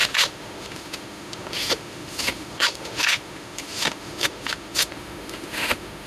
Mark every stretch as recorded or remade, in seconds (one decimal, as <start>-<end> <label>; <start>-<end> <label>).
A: 0.0-6.1 remade